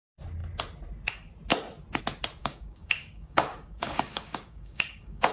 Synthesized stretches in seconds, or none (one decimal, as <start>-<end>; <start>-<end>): 2.4-5.3